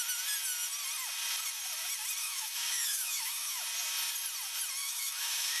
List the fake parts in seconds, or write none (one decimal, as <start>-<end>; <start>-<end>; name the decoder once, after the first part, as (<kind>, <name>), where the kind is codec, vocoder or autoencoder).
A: 2.2-3.6 (autoencoder, DAC-VAE); 4.8-5.6